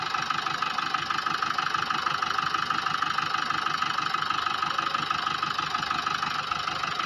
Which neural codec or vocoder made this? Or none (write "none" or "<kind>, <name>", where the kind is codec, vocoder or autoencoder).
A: none